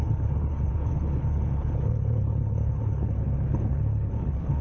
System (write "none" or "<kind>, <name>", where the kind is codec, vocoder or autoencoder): codec, HILCodec